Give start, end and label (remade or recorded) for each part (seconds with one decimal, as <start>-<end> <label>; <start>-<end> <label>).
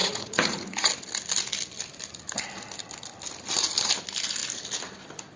0.0-0.9 remade; 0.9-5.4 recorded